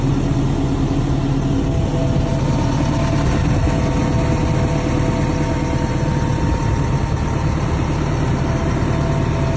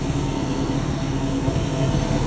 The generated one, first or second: second